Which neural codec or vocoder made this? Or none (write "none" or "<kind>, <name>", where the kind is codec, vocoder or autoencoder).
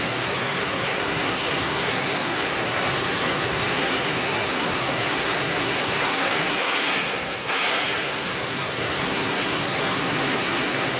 codec, SNAC